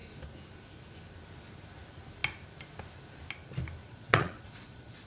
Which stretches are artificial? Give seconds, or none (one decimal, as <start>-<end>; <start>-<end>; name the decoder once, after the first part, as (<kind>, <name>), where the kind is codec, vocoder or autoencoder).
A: 3.8-5.1 (vocoder, Vocos)